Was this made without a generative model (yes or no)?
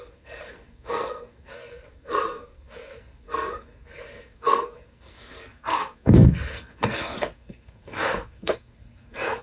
no